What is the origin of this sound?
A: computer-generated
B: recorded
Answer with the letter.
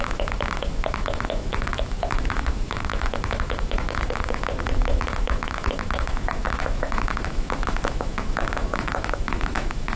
A